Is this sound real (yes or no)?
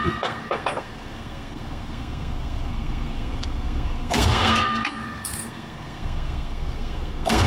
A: no